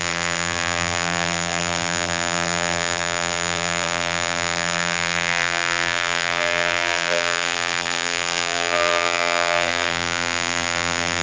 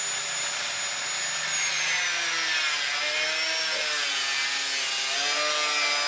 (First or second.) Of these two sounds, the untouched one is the second